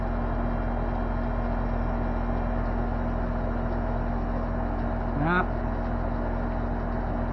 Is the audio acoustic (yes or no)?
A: yes